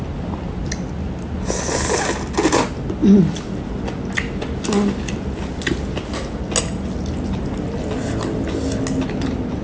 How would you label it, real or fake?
real